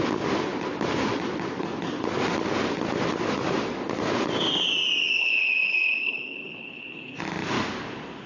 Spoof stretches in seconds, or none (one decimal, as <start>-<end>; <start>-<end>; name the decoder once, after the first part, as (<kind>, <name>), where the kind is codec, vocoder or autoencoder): 5.2-7.2 (codec, HILCodec)